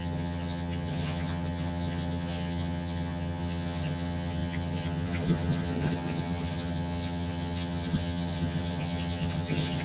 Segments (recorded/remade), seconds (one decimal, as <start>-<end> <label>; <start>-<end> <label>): 0.0-9.8 remade

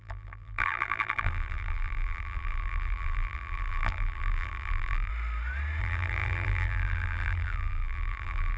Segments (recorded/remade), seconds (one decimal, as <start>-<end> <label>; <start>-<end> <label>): 0.0-5.1 remade; 5.1-5.8 recorded; 5.8-8.6 remade